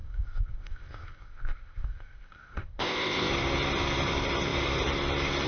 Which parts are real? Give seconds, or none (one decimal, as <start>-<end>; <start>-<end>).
3.3-5.5